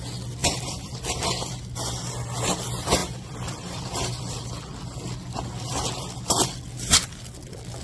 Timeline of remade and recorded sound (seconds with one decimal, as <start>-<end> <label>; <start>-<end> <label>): 0.0-0.4 recorded; 0.4-1.0 remade; 1.0-3.0 recorded; 3.0-4.5 remade; 4.5-7.8 recorded